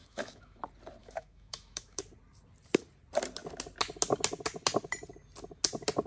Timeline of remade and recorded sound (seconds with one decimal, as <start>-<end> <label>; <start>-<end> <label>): 0.0-0.6 remade; 0.6-1.0 recorded; 1.0-2.0 remade; 2.0-6.1 recorded